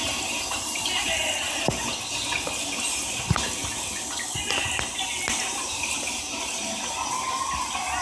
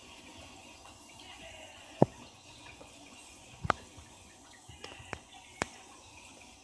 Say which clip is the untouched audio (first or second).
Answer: first